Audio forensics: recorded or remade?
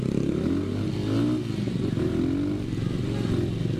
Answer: recorded